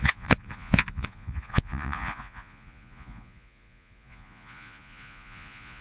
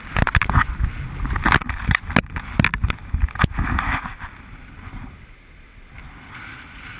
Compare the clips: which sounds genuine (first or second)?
second